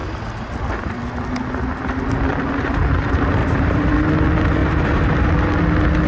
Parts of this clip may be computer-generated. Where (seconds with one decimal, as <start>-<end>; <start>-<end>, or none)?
3.4-4.0; 4.6-5.3